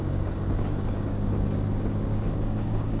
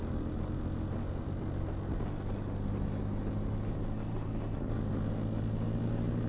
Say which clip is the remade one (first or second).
first